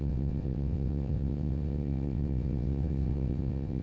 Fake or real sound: fake